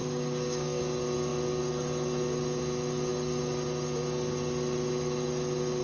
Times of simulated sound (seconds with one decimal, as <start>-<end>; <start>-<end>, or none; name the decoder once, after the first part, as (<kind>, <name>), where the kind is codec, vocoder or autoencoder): 0.0-0.8 (codec, DAC)